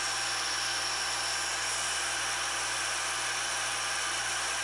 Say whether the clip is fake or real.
real